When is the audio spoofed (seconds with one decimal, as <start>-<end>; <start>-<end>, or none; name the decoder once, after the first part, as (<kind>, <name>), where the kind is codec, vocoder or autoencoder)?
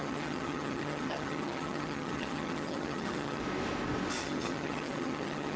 0.0-3.4 (vocoder, HiFi-GAN); 4.2-5.6